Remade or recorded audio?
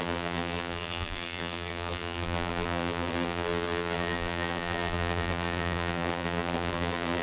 remade